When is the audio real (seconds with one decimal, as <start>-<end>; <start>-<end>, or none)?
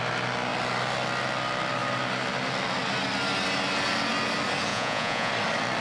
0.0-4.7; 5.3-5.8